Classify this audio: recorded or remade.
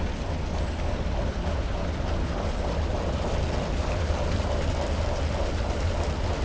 remade